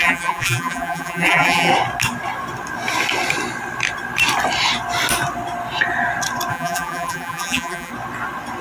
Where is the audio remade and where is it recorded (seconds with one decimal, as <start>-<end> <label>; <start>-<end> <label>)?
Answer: 0.0-1.7 remade; 1.7-6.5 recorded; 6.5-7.9 remade; 7.9-8.6 recorded